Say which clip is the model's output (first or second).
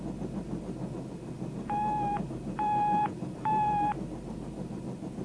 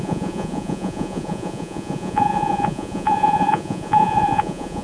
second